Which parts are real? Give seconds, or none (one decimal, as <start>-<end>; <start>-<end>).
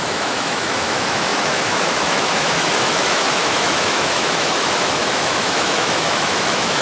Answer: none